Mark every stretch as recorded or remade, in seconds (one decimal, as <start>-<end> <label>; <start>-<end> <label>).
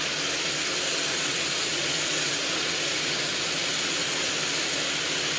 0.0-1.1 recorded; 1.1-4.3 remade; 4.3-5.4 recorded